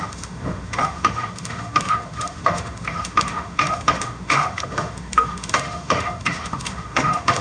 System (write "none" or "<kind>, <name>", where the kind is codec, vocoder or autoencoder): autoencoder, DAC-VAE